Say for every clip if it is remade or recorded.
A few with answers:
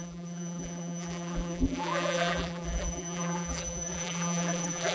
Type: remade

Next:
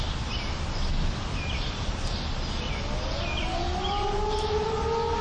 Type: recorded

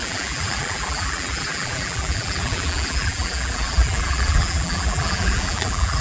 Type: remade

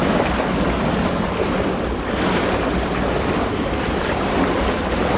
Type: remade